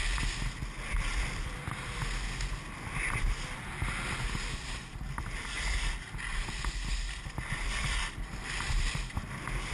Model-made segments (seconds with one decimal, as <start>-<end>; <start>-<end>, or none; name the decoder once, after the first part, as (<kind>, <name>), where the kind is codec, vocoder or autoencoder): none